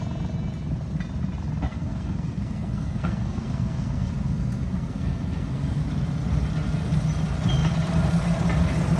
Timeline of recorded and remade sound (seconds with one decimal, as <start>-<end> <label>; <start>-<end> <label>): 0.0-1.7 recorded; 1.7-5.8 remade; 5.8-9.0 recorded